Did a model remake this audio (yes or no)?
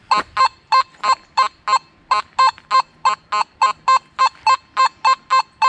no